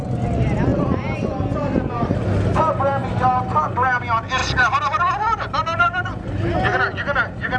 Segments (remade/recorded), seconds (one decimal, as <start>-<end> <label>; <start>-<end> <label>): 0.0-0.7 recorded; 0.7-1.9 remade; 1.9-4.4 recorded; 4.4-7.6 remade

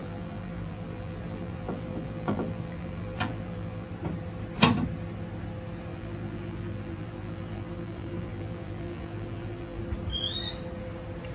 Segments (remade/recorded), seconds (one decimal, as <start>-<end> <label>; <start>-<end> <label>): 0.0-3.9 remade; 3.9-5.9 recorded; 5.9-9.8 remade; 9.8-11.3 recorded

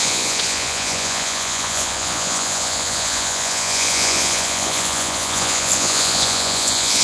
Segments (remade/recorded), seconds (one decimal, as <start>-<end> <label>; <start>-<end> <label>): 0.0-7.0 remade

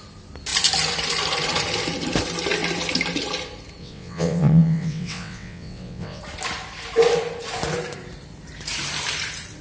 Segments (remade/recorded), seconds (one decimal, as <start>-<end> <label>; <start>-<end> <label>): 0.0-3.8 recorded; 3.8-6.2 remade; 6.2-9.6 recorded

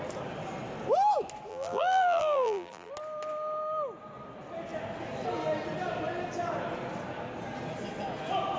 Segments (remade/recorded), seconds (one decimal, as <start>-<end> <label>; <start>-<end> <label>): 0.0-1.5 recorded; 1.5-2.9 remade; 2.9-8.6 recorded

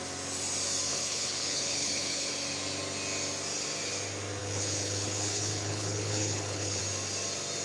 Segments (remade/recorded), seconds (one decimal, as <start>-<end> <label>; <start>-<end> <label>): 0.0-0.9 recorded; 0.9-2.3 remade; 2.3-4.4 recorded; 4.4-6.8 remade; 6.8-7.6 recorded

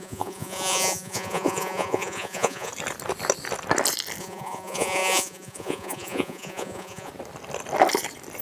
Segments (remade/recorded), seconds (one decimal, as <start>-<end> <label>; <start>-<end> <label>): 0.0-2.7 remade; 2.7-4.2 recorded; 4.2-7.1 remade; 7.1-8.4 recorded

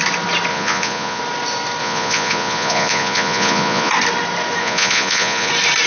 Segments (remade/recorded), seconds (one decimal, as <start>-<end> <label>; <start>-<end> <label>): 0.0-0.5 recorded; 0.5-1.2 remade; 1.2-1.8 recorded; 1.8-3.9 remade; 3.9-4.6 recorded; 4.6-5.5 remade; 5.5-5.9 recorded